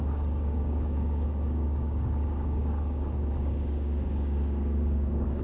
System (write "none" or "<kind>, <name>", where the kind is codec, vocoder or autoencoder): codec, DAC